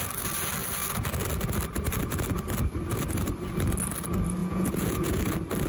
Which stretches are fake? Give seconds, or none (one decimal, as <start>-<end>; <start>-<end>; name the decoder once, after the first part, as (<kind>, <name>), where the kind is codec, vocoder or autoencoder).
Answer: 4.4-5.2 (vocoder, Vocos)